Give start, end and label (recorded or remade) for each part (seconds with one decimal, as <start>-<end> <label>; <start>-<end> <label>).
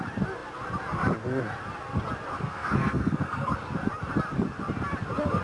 0.0-2.3 recorded; 2.3-3.5 remade; 3.5-5.4 recorded